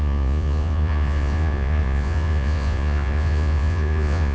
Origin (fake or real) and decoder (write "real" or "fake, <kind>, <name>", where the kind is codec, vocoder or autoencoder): fake, vocoder, Vocos